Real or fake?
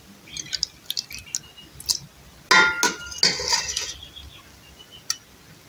real